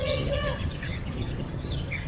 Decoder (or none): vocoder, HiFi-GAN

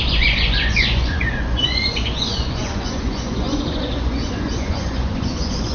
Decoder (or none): vocoder, Vocos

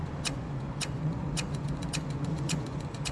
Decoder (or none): vocoder, Vocos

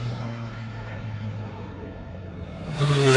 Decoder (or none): codec, SNAC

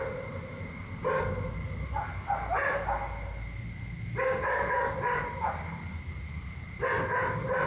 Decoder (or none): none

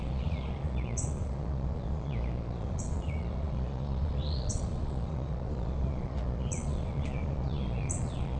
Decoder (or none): vocoder, Vocos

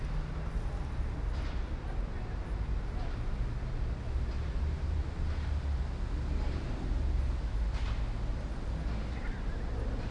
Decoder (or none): none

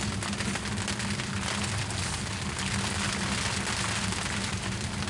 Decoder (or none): none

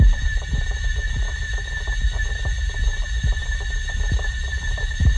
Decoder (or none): none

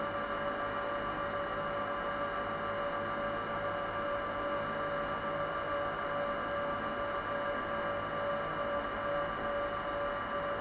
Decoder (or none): none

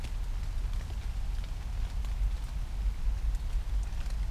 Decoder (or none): none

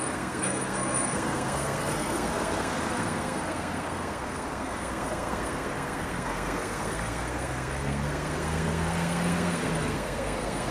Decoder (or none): codec, SNAC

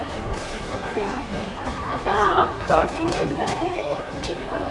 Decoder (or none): codec, SNAC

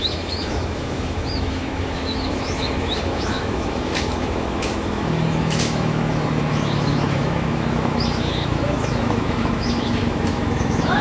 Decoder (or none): autoencoder, DAC-VAE